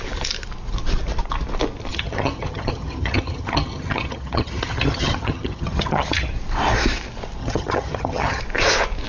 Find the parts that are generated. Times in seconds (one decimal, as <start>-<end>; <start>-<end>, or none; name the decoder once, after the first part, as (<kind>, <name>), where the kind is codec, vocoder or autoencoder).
1.9-6.3 (vocoder, HiFi-GAN); 7.4-8.4